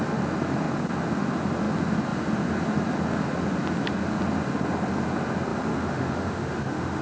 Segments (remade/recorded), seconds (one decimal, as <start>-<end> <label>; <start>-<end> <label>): 0.0-5.7 recorded; 5.7-7.0 remade